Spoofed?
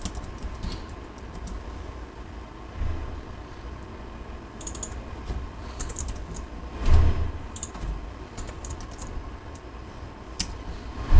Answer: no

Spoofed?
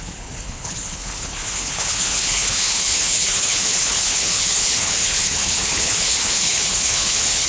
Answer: yes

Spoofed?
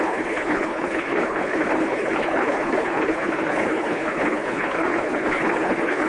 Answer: yes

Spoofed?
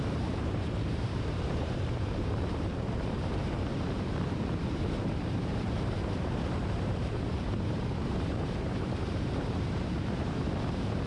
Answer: yes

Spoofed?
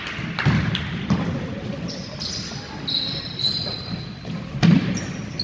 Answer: no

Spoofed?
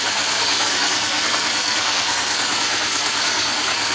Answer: yes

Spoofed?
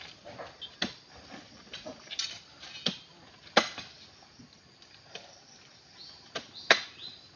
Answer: no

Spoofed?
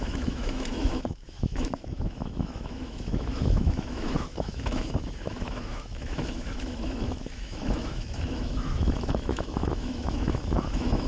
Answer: yes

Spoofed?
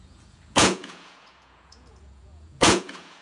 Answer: yes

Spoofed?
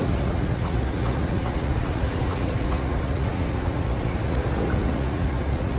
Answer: yes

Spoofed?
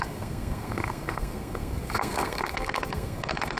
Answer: yes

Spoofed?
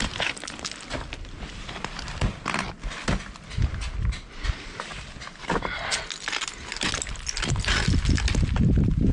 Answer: no